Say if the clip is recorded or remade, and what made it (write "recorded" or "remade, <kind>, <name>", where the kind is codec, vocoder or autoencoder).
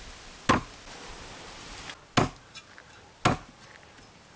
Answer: recorded